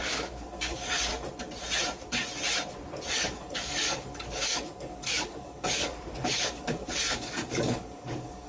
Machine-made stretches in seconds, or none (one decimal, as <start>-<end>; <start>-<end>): 0.0-1.1; 3.1-8.5